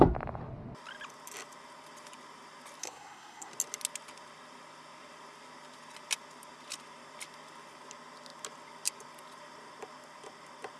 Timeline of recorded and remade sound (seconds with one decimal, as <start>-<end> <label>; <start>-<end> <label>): 0.0-2.8 recorded; 2.8-3.5 remade; 3.5-10.8 recorded